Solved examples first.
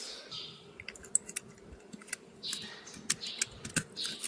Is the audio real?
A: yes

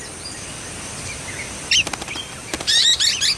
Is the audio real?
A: yes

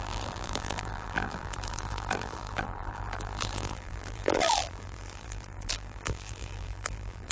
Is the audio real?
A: no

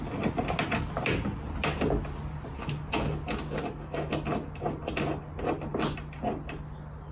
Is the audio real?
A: yes